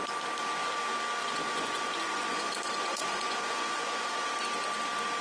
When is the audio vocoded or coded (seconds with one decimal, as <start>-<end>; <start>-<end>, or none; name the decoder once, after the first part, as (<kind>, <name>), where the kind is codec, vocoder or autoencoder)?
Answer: 1.2-4.3 (vocoder, Vocos)